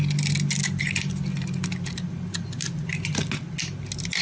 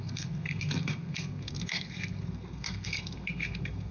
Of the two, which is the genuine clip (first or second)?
first